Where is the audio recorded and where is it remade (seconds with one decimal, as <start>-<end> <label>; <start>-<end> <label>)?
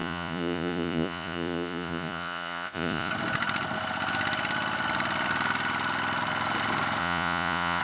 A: 0.0-3.1 remade; 3.1-7.0 recorded; 7.0-7.8 remade